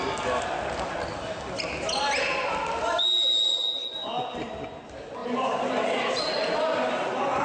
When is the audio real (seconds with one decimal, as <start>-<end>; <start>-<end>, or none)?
0.0-5.2; 6.2-7.4